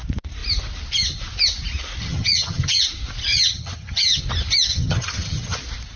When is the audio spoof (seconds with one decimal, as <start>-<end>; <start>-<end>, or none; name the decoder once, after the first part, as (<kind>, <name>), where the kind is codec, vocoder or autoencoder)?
2.0-2.8 (vocoder, HiFi-GAN); 3.3-4.2; 4.7-5.6